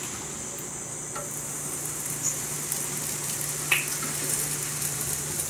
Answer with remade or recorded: recorded